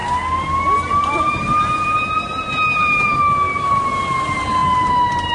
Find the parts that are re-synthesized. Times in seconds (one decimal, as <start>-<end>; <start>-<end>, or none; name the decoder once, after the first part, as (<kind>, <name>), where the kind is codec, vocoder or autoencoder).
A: none